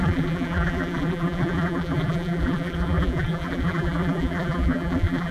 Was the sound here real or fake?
fake